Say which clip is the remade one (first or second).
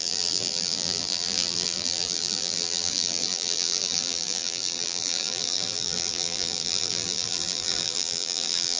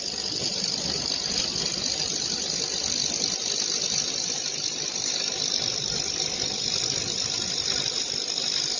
first